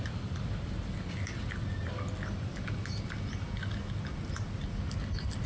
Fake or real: real